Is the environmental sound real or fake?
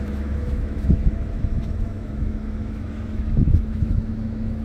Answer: fake